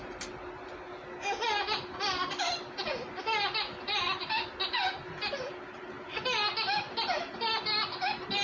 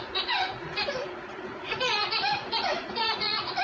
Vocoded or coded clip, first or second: second